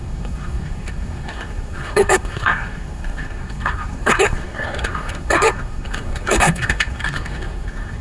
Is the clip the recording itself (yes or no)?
no